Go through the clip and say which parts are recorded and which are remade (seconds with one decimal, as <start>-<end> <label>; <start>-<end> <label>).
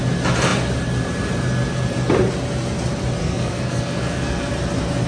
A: 0.0-3.2 recorded; 3.2-4.5 remade; 4.5-5.1 recorded